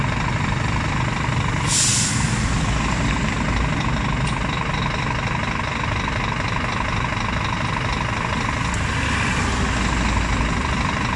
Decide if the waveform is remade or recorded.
recorded